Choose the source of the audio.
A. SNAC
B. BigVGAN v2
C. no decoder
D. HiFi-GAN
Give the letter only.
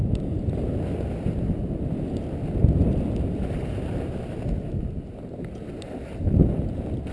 C